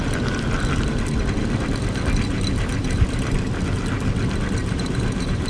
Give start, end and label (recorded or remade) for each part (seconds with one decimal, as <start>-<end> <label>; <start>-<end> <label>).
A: 0.0-4.6 recorded; 4.6-5.5 remade